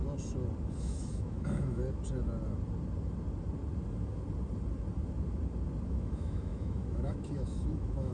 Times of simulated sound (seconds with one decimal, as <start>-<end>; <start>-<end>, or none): 0.8-1.8; 5.9-8.1